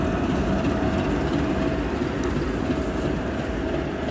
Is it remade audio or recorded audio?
recorded